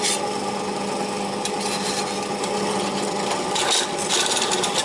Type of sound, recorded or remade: recorded